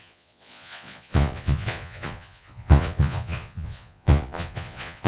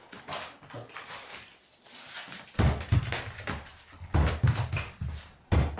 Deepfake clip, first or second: first